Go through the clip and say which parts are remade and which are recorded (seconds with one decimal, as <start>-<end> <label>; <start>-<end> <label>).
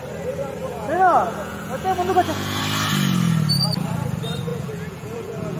0.0-0.6 recorded; 0.6-2.6 remade; 2.6-4.5 recorded; 4.5-5.6 remade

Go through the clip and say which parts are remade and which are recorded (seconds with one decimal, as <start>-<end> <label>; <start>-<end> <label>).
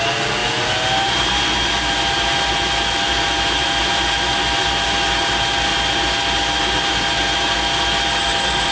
0.0-8.7 recorded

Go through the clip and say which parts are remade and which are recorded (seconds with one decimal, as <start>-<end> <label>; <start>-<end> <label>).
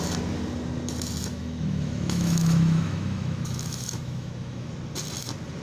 0.0-1.3 recorded; 1.3-4.7 remade; 4.7-5.6 recorded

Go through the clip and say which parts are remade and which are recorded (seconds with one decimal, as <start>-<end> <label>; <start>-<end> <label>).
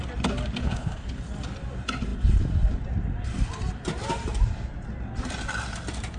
0.0-0.6 recorded; 0.6-1.2 remade; 1.2-6.2 recorded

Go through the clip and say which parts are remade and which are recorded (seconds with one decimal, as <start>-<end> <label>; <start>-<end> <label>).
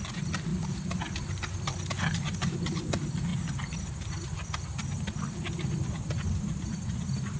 0.0-7.4 recorded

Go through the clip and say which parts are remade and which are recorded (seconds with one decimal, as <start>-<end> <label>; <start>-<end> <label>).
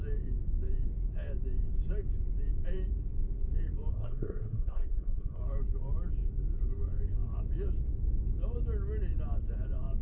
0.0-3.9 recorded; 3.9-5.4 remade; 5.4-10.0 recorded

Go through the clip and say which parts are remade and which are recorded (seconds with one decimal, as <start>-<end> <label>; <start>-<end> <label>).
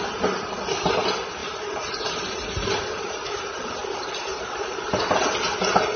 0.0-6.0 recorded